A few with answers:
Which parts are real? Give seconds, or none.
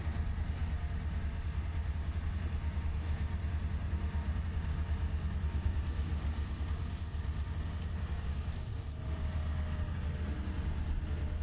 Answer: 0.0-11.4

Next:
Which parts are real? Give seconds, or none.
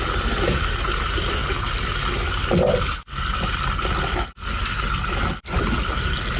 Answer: 0.0-6.4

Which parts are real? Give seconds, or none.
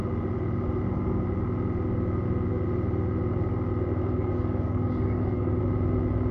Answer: 0.0-4.0; 5.6-6.3